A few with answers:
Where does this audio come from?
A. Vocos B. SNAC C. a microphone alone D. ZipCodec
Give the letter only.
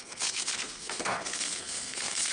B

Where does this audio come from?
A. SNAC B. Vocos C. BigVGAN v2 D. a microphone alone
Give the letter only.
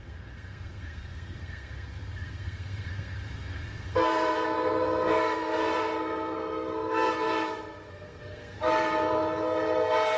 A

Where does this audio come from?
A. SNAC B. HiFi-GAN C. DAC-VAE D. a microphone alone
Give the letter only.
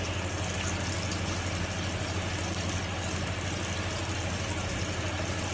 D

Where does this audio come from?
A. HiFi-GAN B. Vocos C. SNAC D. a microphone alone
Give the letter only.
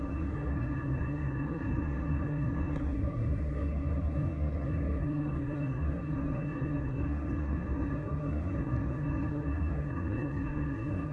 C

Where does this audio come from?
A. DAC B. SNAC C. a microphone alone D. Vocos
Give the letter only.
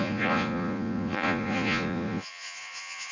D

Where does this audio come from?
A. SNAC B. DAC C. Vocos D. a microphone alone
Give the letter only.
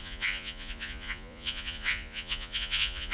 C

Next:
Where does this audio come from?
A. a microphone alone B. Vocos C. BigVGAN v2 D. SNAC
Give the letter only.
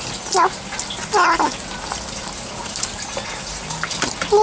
A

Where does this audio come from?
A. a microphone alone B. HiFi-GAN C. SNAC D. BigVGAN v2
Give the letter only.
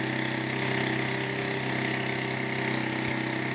A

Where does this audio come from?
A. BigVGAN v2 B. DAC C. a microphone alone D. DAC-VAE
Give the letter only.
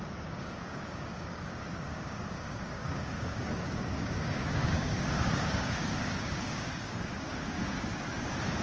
B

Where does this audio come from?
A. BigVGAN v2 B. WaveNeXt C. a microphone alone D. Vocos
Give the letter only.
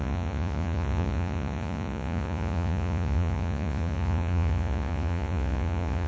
D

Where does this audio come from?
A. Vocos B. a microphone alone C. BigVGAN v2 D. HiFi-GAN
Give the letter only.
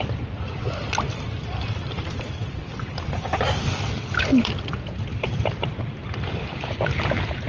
B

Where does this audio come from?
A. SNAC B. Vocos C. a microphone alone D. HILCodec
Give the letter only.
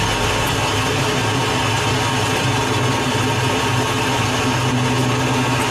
C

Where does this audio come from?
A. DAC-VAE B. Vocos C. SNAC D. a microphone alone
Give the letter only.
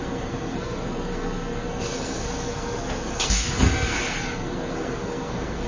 C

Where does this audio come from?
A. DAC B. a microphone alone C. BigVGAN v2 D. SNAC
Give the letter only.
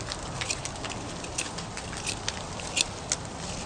B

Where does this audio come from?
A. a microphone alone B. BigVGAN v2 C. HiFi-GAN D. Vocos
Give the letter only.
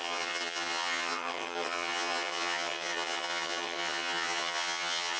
C